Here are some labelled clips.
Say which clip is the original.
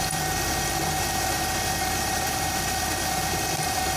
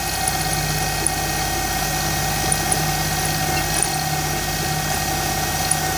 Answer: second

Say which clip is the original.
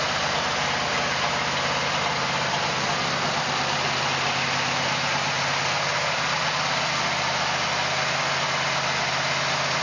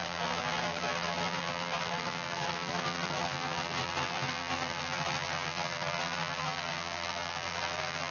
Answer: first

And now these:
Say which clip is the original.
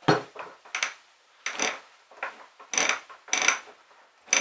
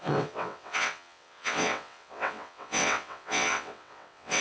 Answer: first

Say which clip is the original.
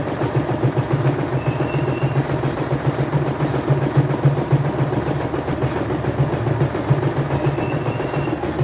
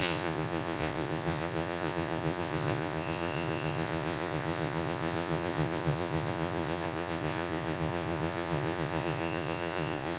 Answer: first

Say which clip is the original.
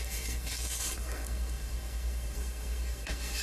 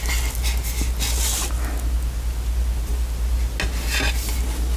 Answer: second